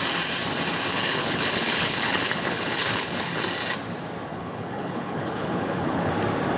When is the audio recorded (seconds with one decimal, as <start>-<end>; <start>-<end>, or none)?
0.0-0.9; 3.4-4.3; 6.1-6.6

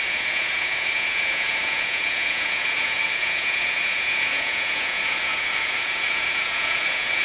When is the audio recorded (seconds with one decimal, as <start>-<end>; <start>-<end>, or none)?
none

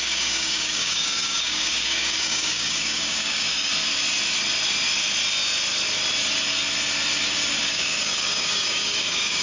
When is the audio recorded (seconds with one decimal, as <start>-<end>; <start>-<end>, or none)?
3.7-7.7

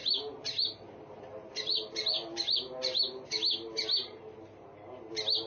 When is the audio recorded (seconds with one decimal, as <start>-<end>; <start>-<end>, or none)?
0.0-5.5

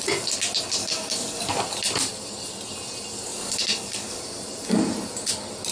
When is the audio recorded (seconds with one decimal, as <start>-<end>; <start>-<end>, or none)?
0.0-0.8; 1.6-3.3; 4.2-5.7